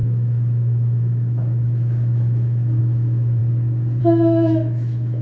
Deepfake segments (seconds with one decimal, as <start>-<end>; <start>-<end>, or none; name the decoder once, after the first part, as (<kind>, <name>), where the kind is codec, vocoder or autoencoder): 0.0-3.4 (autoencoder, DAC-VAE); 4.0-5.2